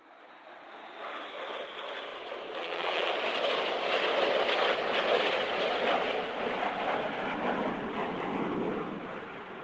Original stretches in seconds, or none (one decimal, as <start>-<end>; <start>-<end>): 0.0-2.1; 3.1-9.6